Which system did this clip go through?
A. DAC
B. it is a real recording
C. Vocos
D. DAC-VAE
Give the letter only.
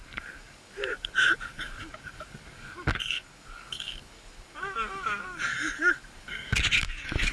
A